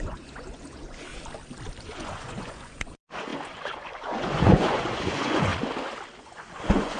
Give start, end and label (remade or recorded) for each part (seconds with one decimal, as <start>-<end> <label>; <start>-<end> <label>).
0.0-1.1 remade; 1.1-1.8 recorded; 1.8-5.5 remade; 5.5-6.2 recorded; 6.2-7.0 remade